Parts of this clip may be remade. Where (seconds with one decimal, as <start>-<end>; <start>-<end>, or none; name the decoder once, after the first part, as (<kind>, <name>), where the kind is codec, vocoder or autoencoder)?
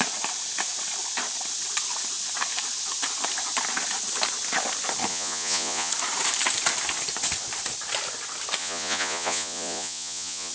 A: 5.1-5.9 (vocoder, Vocos); 8.6-10.5